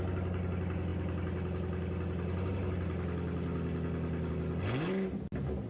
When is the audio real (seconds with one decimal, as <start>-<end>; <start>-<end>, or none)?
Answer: 0.0-5.7